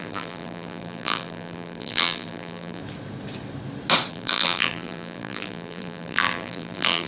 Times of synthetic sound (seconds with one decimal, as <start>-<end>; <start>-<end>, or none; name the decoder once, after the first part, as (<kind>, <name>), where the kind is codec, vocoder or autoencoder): 0.0-2.8 (vocoder, BigVGAN v2); 4.1-7.1

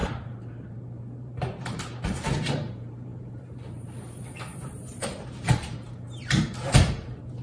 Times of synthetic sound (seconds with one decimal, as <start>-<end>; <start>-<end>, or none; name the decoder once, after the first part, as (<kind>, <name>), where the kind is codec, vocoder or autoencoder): 0.0-7.4 (vocoder, BigVGAN v2)

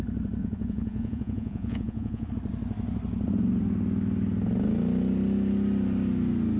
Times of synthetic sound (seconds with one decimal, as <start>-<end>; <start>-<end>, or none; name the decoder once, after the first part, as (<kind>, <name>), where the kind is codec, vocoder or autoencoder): 0.4-2.3 (vocoder, Vocos)

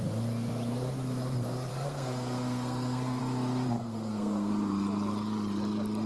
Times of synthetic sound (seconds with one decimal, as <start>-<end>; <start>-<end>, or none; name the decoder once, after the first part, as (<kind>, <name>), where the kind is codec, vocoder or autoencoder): 1.7-3.2 (codec, SNAC); 3.8-4.5

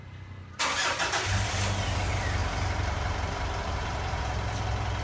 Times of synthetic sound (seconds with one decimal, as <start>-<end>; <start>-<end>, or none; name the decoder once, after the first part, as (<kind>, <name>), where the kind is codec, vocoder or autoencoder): 2.4-4.2 (vocoder, BigVGAN v2)

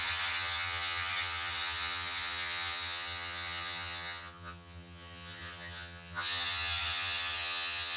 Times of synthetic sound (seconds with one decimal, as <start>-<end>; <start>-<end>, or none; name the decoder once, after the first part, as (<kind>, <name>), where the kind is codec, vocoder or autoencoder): 0.0-8.0 (vocoder, HiFi-GAN)

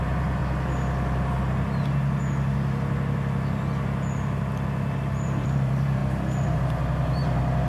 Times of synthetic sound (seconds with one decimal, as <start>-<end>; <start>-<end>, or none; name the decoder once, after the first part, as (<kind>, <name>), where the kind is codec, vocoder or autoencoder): 0.0-0.4 (vocoder, BigVGAN v2); 5.0-7.7